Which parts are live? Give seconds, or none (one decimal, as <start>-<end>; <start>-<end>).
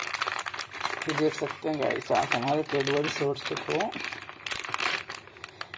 0.0-1.6; 5.1-5.8